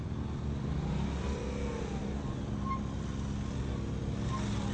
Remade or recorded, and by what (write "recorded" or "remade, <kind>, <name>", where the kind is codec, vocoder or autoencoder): recorded